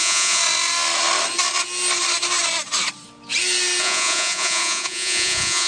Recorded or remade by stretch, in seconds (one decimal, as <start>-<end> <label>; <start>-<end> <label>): 0.0-0.4 remade; 0.4-3.8 recorded; 3.8-5.7 remade

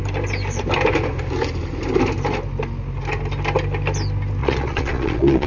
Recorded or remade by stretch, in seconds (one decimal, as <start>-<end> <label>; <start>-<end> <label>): 0.0-4.4 recorded; 4.4-5.5 remade

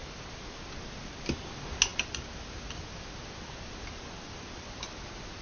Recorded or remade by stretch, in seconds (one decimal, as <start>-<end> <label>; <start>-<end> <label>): 0.0-5.4 recorded

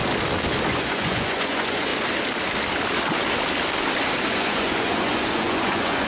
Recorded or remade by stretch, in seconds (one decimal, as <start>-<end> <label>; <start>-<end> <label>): 0.0-0.7 recorded; 0.7-1.9 remade; 1.9-4.3 recorded; 4.3-6.1 remade

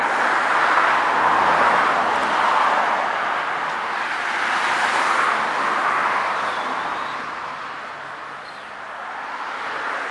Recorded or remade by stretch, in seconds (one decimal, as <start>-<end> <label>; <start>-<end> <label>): 0.0-10.1 recorded

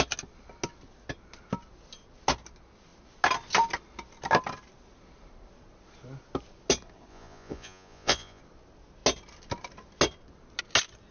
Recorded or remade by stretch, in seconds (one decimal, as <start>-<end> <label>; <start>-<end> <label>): 0.0-7.1 recorded; 7.1-8.4 remade; 8.4-11.1 recorded